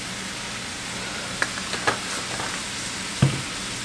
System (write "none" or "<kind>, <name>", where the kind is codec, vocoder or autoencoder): none